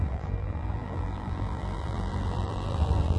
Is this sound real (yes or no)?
no